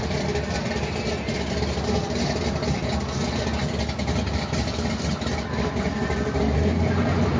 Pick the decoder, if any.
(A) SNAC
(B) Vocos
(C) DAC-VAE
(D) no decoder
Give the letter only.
D